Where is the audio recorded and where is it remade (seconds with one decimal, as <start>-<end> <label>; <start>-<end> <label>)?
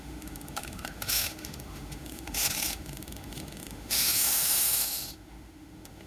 0.0-6.1 remade